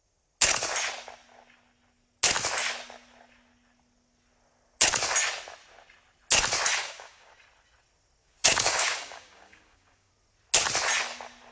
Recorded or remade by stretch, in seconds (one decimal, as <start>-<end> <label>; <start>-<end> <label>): 0.0-6.8 recorded; 6.8-7.3 remade; 7.3-8.2 recorded; 8.2-10.1 remade; 10.1-11.5 recorded